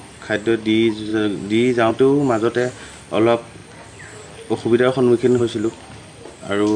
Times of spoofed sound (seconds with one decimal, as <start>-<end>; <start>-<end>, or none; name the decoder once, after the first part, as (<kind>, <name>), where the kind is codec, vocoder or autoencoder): none